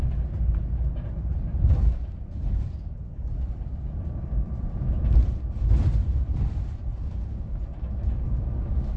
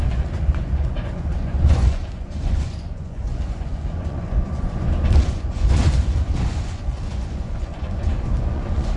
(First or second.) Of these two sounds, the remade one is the second